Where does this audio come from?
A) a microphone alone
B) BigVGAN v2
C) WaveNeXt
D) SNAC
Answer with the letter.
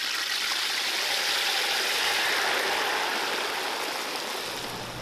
A